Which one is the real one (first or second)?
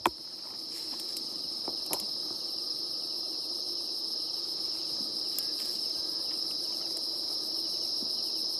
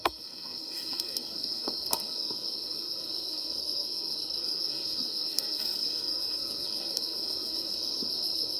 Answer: first